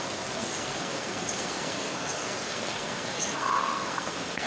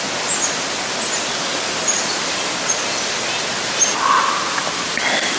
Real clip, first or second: second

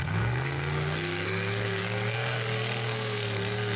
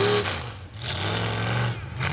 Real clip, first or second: second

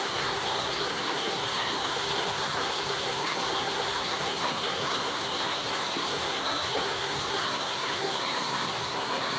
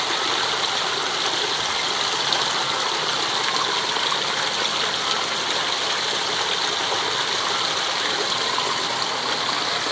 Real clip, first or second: second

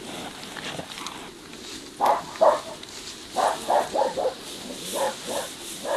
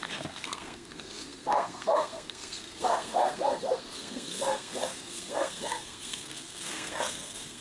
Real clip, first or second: first